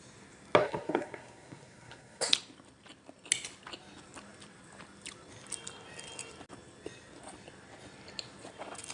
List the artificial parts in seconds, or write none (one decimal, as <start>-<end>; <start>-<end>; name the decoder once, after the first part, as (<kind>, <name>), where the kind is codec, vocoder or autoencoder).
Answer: 0.6-2.3 (codec, SNAC)